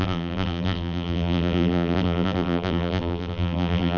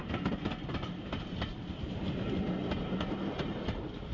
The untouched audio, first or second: second